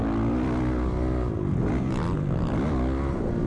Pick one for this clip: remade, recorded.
recorded